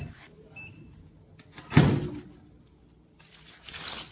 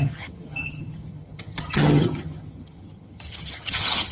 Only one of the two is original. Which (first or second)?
first